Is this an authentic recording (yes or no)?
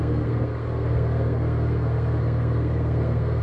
no